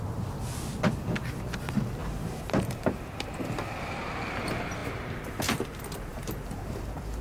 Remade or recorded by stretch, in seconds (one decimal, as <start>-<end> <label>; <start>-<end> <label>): 0.0-2.0 recorded; 2.0-4.3 remade; 4.3-6.1 recorded; 6.1-7.2 remade